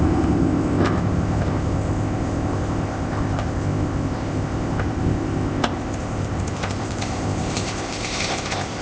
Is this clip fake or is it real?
fake